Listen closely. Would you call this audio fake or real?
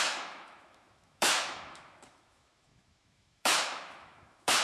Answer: fake